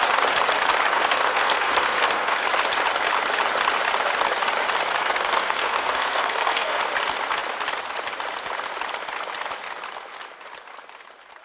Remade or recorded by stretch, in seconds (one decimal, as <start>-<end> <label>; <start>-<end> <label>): 0.0-0.9 recorded; 0.9-2.4 remade; 2.4-5.0 recorded; 5.0-6.8 remade; 6.8-11.4 recorded